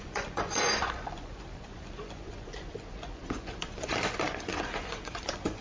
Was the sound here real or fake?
fake